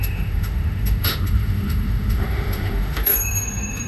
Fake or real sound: fake